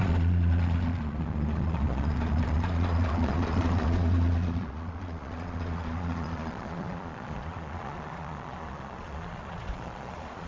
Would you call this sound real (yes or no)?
no